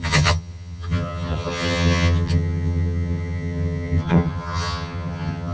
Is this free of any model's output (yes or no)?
no